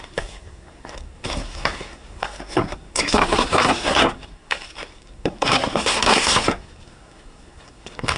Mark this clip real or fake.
fake